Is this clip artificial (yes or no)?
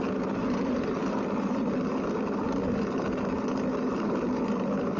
no